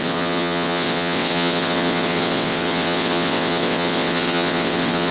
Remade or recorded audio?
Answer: remade